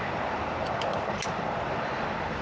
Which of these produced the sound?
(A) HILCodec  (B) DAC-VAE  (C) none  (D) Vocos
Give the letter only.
C